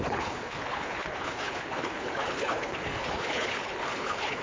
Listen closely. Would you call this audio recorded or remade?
remade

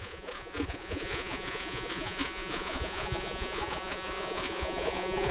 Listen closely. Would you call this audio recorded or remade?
remade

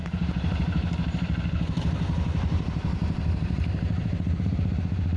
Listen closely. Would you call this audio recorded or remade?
remade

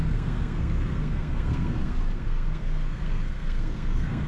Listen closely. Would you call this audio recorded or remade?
remade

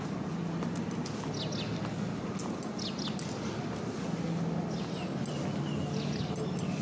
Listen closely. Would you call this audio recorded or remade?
recorded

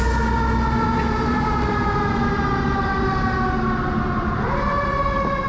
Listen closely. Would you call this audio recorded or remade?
recorded